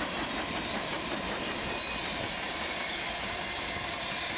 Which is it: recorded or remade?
remade